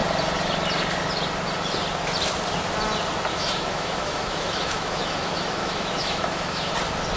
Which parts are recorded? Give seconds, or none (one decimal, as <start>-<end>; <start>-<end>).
0.0-3.3; 6.7-7.2